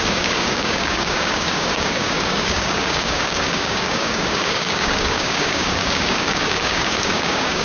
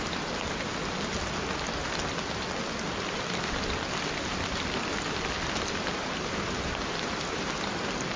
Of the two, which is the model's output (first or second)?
first